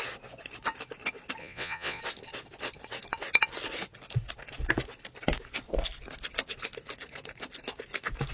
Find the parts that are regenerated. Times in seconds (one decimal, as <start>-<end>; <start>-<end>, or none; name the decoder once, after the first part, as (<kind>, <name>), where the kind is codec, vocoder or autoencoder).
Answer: 1.4-2.0 (vocoder, Vocos)

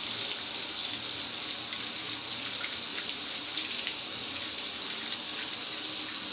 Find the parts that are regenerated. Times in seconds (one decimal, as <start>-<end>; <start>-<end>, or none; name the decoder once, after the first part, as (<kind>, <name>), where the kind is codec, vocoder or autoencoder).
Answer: 2.9-5.4 (vocoder, BigVGAN v2)

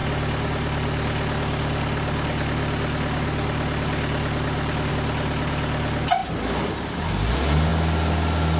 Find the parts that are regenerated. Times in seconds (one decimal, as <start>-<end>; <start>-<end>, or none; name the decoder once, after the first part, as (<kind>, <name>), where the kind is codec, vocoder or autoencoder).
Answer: none

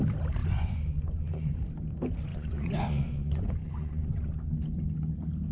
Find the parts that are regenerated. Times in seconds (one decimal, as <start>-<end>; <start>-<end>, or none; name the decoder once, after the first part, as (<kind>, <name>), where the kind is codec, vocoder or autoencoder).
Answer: 0.4-1.5 (vocoder, Vocos); 2.3-4.3

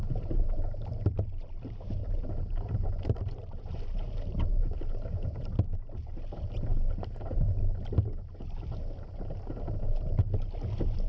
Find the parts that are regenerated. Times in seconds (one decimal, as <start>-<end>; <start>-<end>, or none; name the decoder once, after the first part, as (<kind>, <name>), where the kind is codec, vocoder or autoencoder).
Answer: 0.0-6.7 (vocoder, BigVGAN v2)